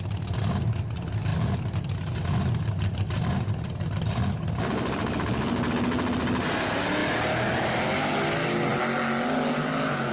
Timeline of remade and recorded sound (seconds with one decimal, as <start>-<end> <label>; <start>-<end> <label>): 0.0-10.1 recorded